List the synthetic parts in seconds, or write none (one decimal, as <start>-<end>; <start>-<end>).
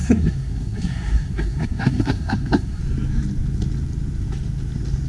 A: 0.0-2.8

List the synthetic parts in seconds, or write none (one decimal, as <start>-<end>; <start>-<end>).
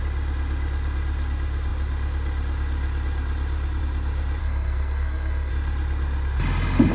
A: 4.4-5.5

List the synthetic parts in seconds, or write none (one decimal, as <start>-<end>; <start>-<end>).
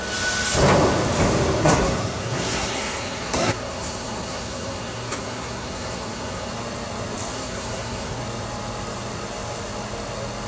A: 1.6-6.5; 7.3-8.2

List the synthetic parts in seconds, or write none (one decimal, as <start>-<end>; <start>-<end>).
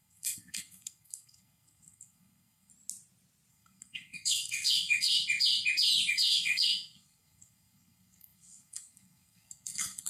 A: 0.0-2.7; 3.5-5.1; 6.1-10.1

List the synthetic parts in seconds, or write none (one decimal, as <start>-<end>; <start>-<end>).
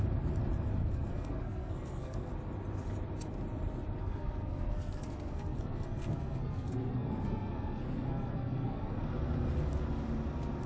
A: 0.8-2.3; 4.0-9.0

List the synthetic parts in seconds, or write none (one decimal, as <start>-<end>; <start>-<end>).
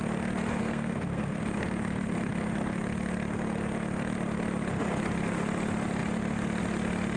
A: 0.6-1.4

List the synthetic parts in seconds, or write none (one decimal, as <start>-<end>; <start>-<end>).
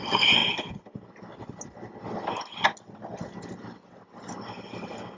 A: none